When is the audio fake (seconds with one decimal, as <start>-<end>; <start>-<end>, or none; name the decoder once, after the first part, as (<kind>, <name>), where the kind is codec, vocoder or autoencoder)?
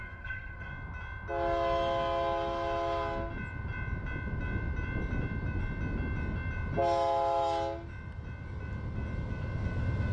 0.0-0.7 (codec, SNAC)